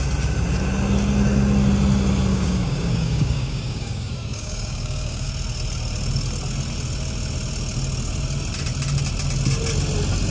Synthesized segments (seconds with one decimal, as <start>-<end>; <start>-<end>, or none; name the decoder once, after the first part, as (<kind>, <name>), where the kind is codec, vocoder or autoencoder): 2.3-5.3 (codec, DAC)